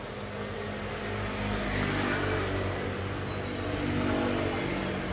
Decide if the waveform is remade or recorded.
recorded